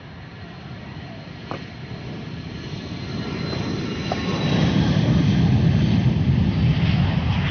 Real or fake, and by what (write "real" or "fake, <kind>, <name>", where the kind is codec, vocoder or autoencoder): real